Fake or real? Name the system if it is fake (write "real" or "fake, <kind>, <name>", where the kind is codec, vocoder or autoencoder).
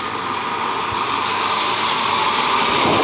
real